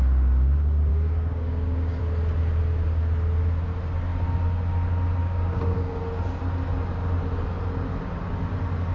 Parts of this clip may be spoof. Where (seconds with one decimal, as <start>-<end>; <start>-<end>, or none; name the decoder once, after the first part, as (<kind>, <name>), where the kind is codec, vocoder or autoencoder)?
0.9-2.0 (codec, DAC); 5.2-6.0